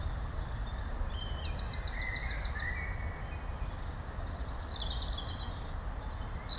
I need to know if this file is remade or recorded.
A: recorded